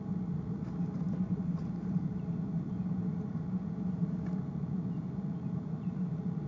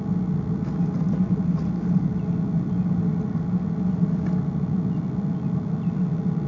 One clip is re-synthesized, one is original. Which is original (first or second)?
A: second